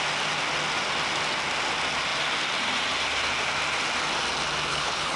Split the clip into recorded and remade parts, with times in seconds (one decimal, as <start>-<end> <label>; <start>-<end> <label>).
0.0-4.7 recorded; 4.7-5.2 remade